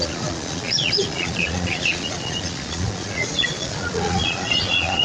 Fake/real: fake